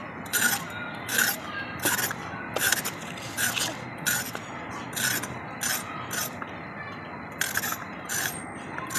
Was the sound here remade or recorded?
recorded